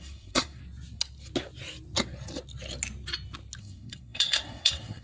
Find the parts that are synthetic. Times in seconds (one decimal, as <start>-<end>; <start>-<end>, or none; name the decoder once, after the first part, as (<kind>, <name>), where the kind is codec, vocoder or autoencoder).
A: 0.0-0.6 (codec, SNAC); 3.6-5.0